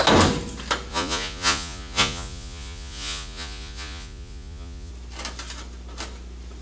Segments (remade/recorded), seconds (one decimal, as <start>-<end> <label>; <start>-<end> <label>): 0.0-0.9 recorded; 0.9-4.9 remade; 4.9-6.6 recorded

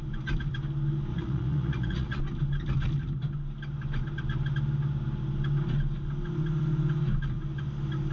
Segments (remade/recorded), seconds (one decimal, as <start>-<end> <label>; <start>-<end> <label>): 0.0-1.1 recorded; 1.1-2.2 remade; 2.2-8.1 recorded

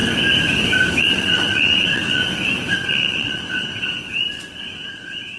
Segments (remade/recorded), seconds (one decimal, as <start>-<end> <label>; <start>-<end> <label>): 0.0-1.0 recorded; 1.0-2.2 remade; 2.2-2.7 recorded; 2.7-4.0 remade; 4.0-4.6 recorded; 4.6-5.4 remade